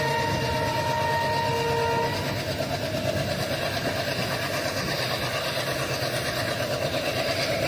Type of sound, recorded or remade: recorded